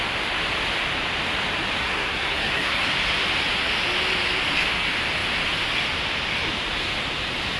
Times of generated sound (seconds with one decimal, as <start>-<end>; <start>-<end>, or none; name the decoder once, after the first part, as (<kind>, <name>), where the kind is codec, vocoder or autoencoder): 1.8-2.9 (codec, SNAC)